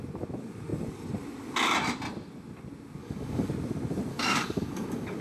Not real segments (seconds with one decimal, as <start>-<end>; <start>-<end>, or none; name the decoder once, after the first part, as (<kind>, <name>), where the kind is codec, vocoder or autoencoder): 3.0-3.5 (codec, DAC); 4.1-5.2